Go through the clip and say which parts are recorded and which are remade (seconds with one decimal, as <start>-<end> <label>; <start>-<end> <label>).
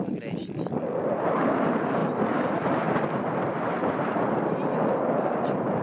0.0-0.4 recorded; 0.4-1.3 remade; 1.3-2.0 recorded; 2.0-4.8 remade; 4.8-5.8 recorded